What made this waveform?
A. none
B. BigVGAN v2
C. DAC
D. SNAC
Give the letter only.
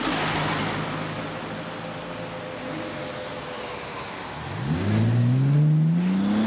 A